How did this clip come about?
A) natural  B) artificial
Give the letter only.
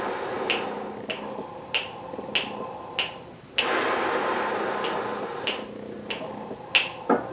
A